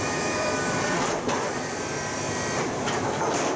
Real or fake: fake